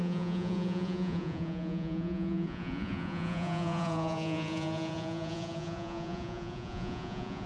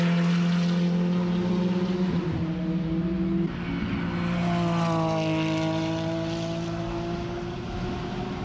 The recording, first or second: second